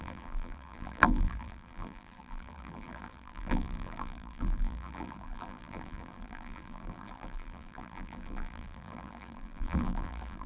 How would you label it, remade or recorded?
remade